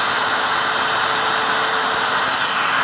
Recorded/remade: recorded